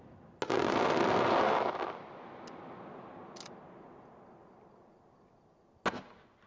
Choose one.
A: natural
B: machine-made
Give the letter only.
A